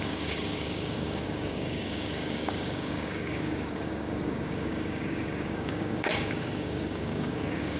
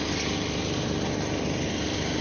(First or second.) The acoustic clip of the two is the second